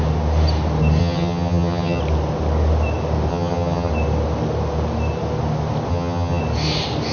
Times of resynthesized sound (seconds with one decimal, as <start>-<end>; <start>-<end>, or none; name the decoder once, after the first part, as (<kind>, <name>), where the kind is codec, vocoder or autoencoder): 1.0-2.0 (vocoder, HiFi-GAN); 3.3-3.9; 5.9-6.4